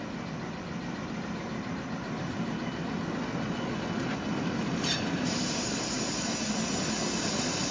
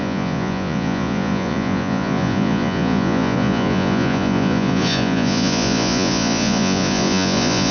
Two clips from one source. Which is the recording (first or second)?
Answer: first